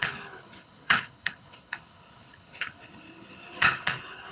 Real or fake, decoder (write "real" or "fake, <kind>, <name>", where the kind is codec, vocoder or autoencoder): fake, codec, HILCodec